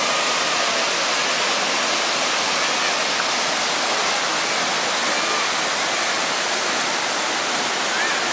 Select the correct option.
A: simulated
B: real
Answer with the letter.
B